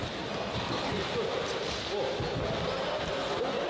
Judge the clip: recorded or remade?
recorded